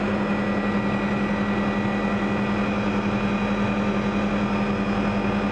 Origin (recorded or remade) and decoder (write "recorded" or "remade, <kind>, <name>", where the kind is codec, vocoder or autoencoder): recorded